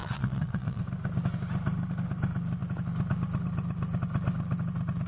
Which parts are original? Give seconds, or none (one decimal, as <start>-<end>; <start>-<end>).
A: 0.8-5.1